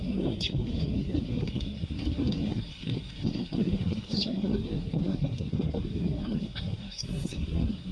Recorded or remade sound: remade